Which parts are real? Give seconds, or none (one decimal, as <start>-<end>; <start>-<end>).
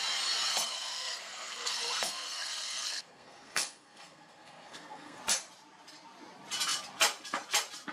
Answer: 0.0-0.5; 5.2-7.9